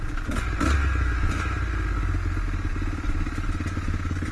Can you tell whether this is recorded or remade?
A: recorded